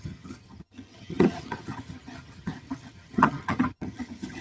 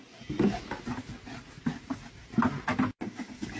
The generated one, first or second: first